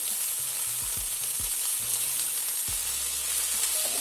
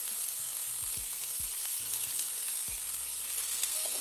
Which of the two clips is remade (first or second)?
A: second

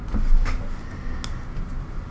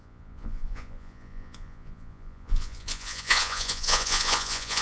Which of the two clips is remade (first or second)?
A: second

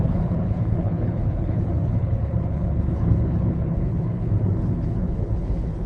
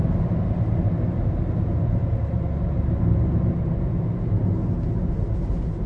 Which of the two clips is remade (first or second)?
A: first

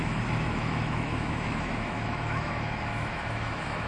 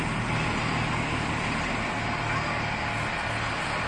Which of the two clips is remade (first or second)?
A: first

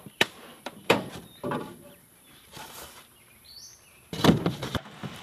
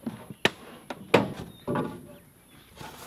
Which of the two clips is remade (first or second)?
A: first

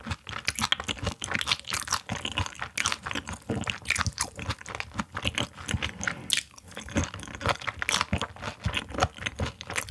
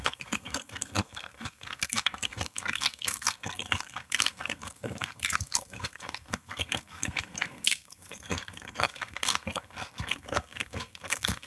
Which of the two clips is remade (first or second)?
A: second